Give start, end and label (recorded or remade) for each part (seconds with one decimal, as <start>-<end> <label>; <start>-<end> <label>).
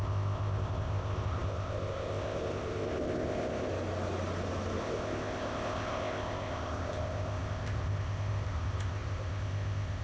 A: 0.0-3.7 remade; 3.7-4.8 recorded; 4.8-10.0 remade